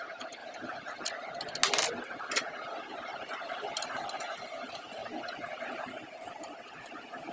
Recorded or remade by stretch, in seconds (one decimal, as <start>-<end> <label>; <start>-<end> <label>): 0.0-0.4 recorded; 0.4-1.3 remade; 1.3-3.1 recorded; 3.1-4.2 remade; 4.2-5.0 recorded; 5.0-5.9 remade; 5.9-7.3 recorded